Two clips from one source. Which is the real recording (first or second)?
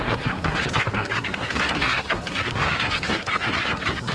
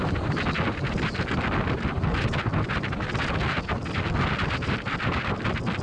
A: second